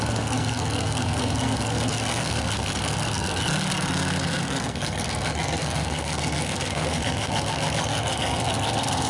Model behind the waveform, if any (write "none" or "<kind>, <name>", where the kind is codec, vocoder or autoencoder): codec, SNAC